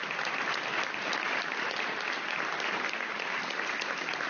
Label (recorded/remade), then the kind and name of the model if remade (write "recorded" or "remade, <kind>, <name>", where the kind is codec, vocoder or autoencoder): recorded